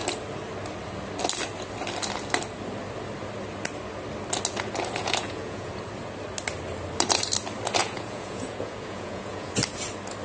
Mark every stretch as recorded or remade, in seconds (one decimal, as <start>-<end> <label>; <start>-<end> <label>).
0.0-5.0 recorded; 5.0-5.7 remade; 5.7-7.8 recorded; 7.8-9.5 remade; 9.5-10.2 recorded